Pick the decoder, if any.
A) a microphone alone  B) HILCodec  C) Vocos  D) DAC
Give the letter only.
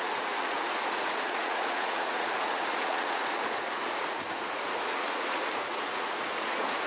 C